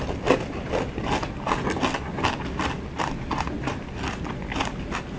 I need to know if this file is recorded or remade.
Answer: recorded